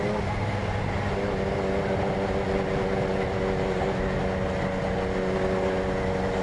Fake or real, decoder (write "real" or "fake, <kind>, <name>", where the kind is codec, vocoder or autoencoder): real